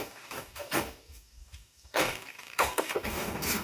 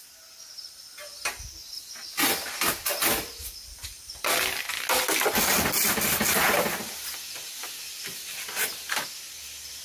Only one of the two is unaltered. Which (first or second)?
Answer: second